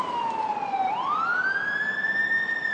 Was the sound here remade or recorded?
recorded